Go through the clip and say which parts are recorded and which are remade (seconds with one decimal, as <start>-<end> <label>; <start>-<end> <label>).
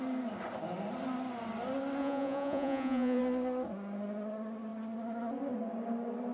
0.0-2.0 recorded; 2.0-3.2 remade; 3.2-6.3 recorded